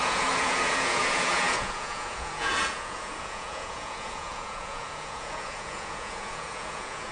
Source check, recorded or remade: remade